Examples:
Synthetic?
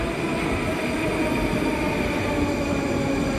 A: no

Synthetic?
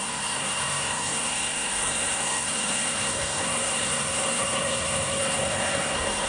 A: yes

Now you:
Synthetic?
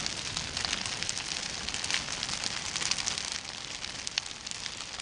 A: no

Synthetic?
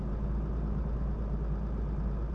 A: no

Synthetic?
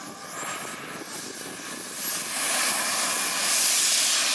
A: no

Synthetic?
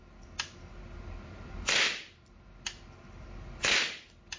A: no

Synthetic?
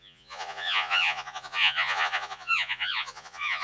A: yes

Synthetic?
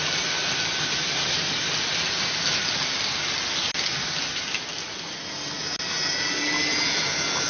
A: no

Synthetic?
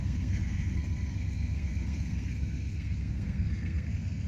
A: yes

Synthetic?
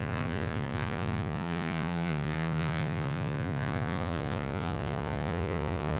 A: yes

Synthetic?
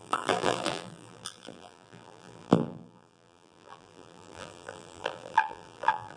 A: yes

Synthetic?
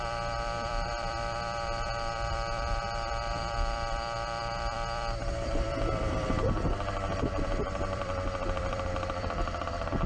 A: yes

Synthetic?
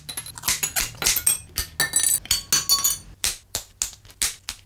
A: no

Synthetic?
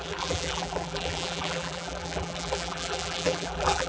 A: yes